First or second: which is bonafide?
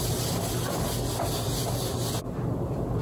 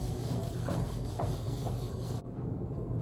first